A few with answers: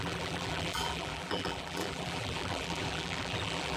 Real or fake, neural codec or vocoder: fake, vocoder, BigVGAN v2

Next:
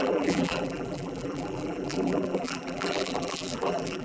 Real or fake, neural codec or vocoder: fake, vocoder, BigVGAN v2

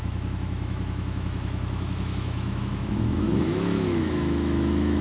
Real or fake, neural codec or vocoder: fake, autoencoder, DAC-VAE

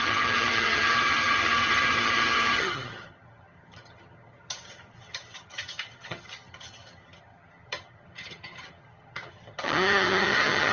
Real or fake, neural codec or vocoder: fake, vocoder, HiFi-GAN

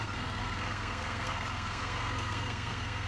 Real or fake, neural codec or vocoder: fake, codec, SNAC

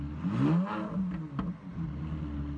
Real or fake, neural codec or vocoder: real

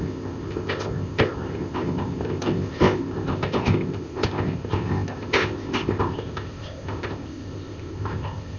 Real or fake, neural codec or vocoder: fake, codec, ZipCodec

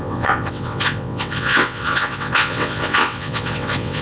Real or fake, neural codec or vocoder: fake, vocoder, WaveNeXt